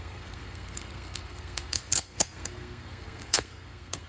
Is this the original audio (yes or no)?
no